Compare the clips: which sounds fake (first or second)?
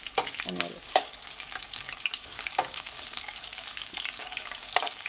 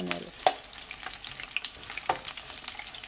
first